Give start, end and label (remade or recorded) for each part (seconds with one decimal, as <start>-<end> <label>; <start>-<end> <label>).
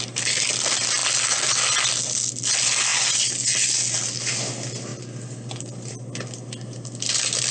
0.0-7.5 recorded